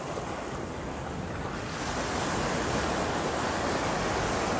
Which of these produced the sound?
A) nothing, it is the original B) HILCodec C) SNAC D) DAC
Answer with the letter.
A